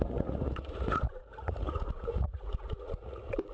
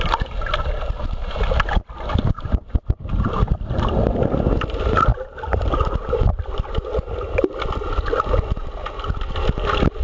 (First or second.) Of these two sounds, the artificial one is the first